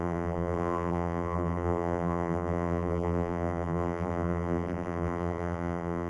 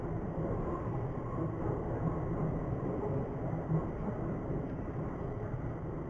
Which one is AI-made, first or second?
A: first